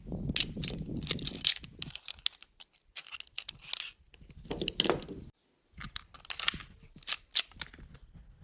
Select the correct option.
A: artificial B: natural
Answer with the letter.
B